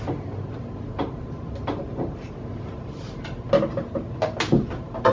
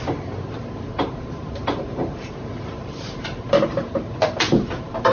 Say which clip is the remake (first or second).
second